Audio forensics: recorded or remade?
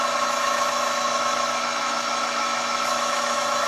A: remade